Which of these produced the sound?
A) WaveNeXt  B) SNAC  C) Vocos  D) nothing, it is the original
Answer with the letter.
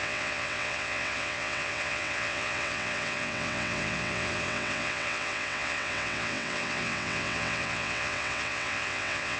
A